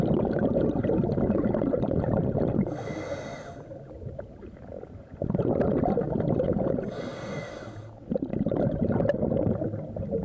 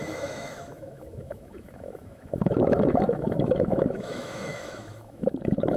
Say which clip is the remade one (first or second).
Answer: second